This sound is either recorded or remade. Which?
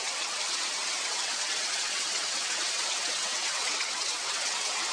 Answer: remade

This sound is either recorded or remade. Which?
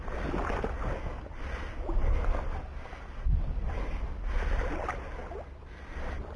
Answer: recorded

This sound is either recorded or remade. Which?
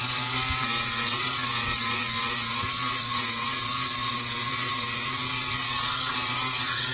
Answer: remade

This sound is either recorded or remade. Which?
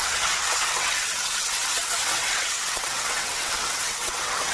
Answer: remade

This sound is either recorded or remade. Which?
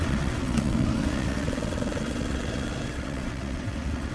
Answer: remade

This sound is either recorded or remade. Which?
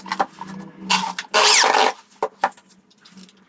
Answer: recorded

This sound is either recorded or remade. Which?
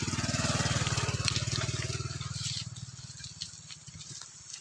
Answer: recorded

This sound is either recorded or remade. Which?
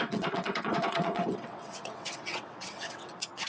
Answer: remade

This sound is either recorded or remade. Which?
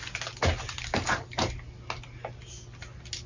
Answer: recorded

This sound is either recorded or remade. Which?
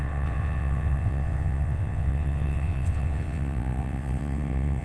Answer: remade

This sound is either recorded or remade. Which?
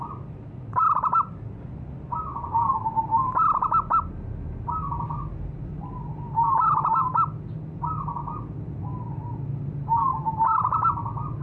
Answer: recorded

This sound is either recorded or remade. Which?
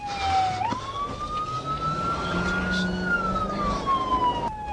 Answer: recorded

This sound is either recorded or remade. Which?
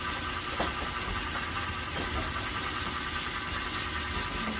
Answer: recorded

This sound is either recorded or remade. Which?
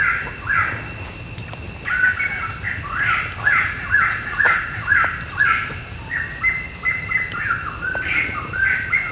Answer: recorded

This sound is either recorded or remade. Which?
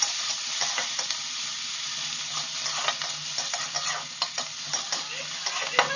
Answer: recorded